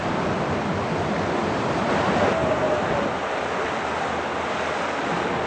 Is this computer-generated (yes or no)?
no